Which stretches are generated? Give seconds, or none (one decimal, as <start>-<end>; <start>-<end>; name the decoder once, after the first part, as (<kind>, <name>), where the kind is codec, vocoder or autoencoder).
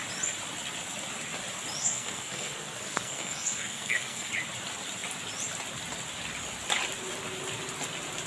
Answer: 1.8-4.3 (codec, SNAC)